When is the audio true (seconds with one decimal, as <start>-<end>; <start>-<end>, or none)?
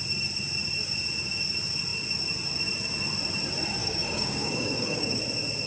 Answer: 0.0-3.8; 5.2-5.7